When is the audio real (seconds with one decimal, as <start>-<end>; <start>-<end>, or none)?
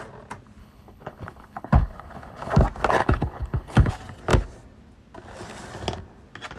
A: 0.0-0.6; 2.5-3.0; 3.9-6.6